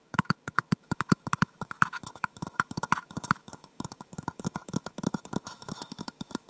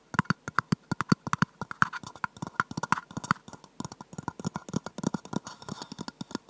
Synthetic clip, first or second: first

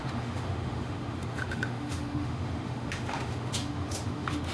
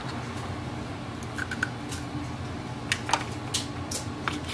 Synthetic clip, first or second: first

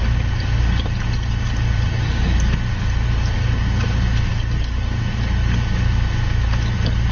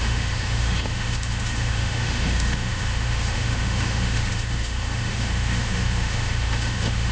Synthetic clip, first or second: second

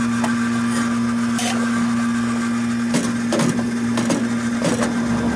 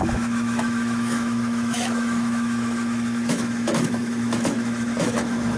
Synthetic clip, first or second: second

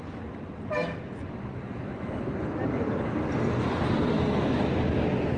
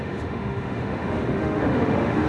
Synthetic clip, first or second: second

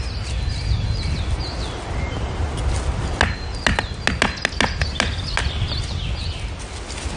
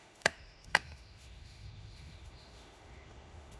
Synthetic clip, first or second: second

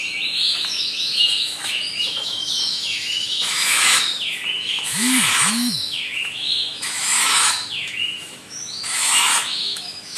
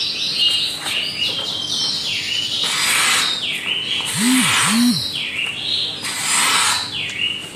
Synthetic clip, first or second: first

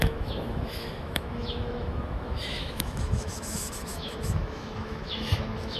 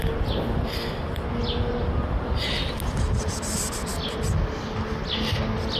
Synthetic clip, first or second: first